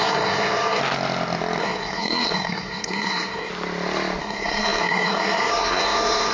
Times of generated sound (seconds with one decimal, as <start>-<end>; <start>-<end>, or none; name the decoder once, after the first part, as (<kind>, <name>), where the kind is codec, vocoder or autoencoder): 0.0-0.8 (codec, SNAC); 1.6-3.5; 4.2-6.3